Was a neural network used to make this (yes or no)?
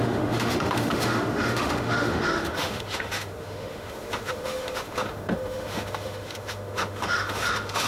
yes